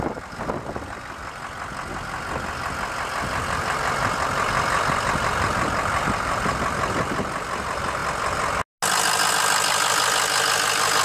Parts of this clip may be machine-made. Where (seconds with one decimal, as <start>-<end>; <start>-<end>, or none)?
none